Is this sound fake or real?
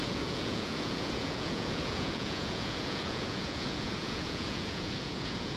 fake